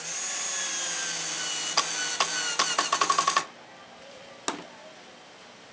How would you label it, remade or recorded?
recorded